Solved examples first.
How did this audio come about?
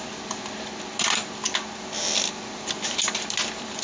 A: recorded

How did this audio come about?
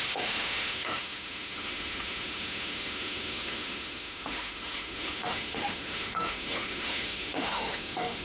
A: remade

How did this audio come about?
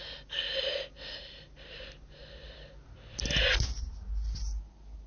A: recorded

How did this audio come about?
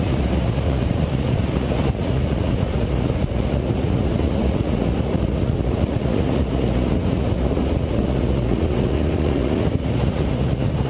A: remade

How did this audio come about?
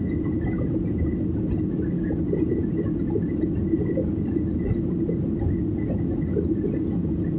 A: recorded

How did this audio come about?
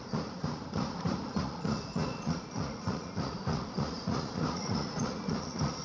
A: remade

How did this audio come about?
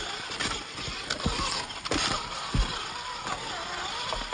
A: recorded